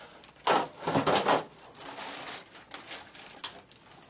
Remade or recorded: recorded